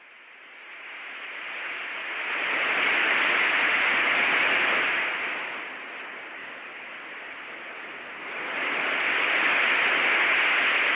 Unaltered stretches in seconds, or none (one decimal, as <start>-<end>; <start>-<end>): 0.0-11.0